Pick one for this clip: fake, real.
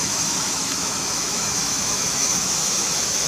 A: fake